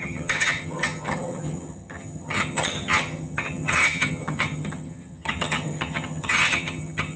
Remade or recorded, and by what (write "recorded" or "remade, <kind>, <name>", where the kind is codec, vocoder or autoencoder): remade, vocoder, HiFi-GAN